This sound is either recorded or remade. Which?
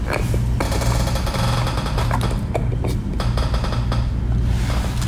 recorded